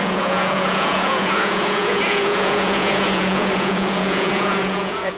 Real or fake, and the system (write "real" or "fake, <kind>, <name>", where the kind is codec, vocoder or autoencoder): fake, vocoder, Vocos